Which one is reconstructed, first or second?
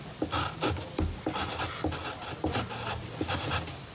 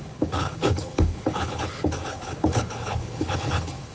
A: second